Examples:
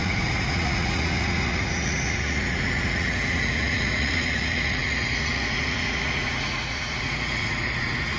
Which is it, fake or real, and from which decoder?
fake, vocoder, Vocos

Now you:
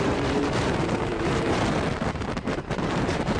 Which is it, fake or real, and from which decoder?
fake, vocoder, BigVGAN v2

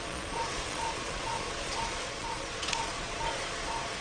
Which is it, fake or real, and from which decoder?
fake, vocoder, Vocos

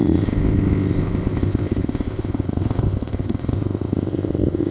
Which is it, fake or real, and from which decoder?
fake, codec, ZipCodec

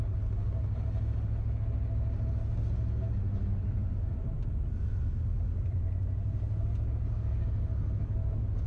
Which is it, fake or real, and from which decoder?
real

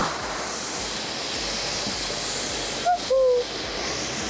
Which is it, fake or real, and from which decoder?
real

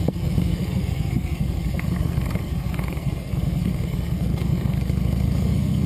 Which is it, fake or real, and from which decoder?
fake, codec, SNAC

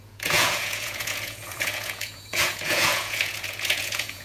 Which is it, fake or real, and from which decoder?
fake, vocoder, Vocos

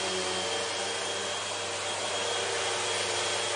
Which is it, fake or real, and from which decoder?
real